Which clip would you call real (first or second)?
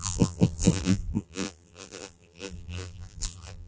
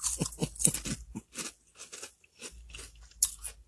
second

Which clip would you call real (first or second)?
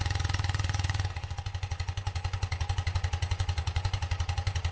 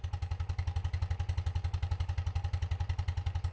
second